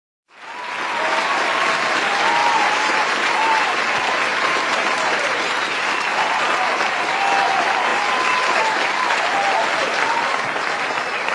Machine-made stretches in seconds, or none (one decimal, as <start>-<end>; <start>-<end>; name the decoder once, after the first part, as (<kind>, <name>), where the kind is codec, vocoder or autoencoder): 2.4-3.8 (vocoder, BigVGAN v2); 4.3-5.9